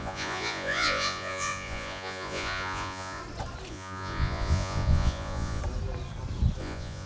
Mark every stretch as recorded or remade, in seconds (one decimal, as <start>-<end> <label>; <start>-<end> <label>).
0.0-3.2 remade; 3.2-3.7 recorded; 3.7-5.6 remade; 5.6-6.6 recorded; 6.6-7.1 remade